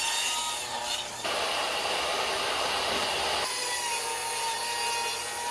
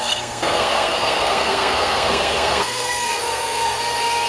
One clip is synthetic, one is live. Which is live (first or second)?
first